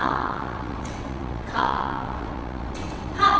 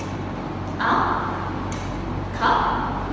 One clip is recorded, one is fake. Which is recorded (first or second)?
second